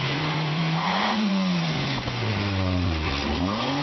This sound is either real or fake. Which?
fake